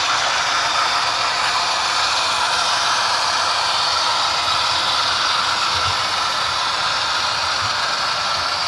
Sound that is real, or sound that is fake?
real